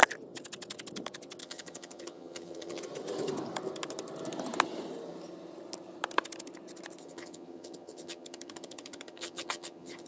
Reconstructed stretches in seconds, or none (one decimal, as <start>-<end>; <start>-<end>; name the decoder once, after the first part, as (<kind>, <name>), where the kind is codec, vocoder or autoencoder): 1.4-2.8 (vocoder, HiFi-GAN); 7.0-10.1